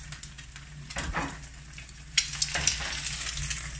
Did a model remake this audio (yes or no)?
no